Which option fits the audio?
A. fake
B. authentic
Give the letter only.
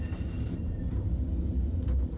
B